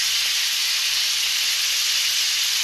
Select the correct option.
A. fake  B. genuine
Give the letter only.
B